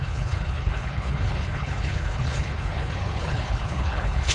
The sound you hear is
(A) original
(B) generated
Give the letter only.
B